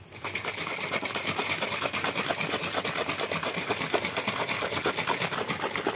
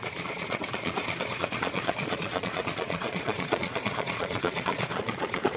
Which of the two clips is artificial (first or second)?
second